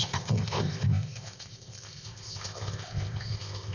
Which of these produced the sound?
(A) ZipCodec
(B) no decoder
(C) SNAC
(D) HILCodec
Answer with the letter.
A